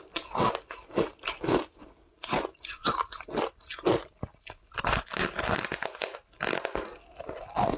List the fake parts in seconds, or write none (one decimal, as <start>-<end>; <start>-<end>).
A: none